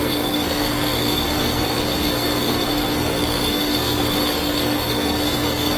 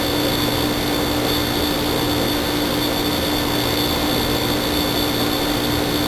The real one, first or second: second